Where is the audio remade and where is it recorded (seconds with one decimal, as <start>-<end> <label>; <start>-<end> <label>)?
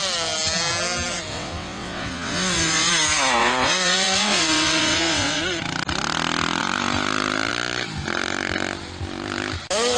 0.0-1.3 recorded; 1.3-2.9 remade; 2.9-3.4 recorded; 3.4-5.4 remade; 5.4-10.0 recorded